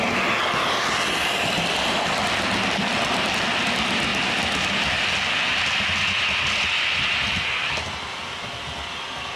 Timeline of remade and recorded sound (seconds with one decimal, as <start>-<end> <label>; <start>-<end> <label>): 0.0-9.4 recorded